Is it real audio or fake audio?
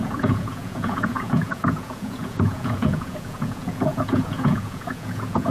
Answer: fake